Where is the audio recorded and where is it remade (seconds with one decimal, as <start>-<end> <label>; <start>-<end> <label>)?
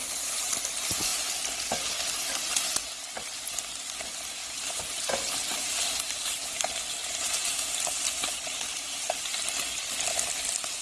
0.0-0.6 remade; 0.6-4.4 recorded; 4.4-5.1 remade; 5.1-7.0 recorded; 7.0-7.8 remade; 7.8-10.8 recorded